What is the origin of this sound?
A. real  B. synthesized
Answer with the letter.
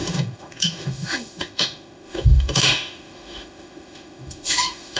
B